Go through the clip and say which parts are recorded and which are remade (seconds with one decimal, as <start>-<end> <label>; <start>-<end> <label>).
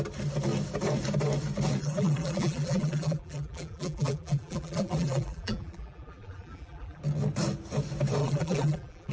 0.0-1.8 recorded; 1.8-7.0 remade; 7.0-8.2 recorded; 8.2-9.1 remade